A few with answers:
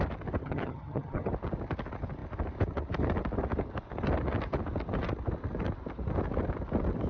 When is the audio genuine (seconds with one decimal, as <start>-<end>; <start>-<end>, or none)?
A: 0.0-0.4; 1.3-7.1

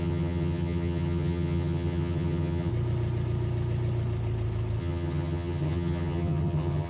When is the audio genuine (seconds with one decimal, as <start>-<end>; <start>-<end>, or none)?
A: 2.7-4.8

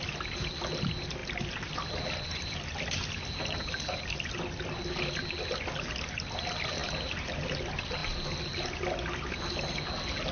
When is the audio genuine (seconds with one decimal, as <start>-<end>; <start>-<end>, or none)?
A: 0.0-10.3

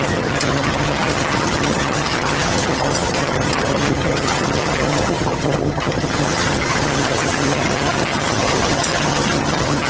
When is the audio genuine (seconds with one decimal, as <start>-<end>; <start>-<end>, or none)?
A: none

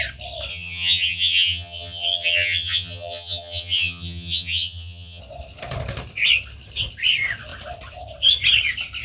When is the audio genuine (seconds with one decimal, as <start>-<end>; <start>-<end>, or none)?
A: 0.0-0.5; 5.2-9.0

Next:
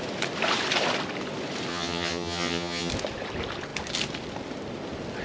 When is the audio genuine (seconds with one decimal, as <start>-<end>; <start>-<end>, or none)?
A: 0.0-1.7; 2.9-5.2